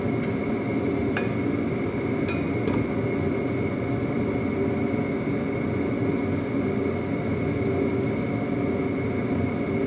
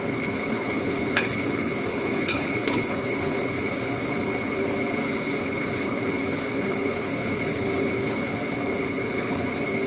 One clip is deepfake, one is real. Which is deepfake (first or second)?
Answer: second